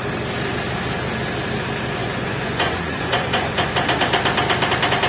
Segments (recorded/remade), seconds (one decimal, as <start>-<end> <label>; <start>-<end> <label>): 0.0-2.0 recorded; 2.0-3.7 remade; 3.7-5.1 recorded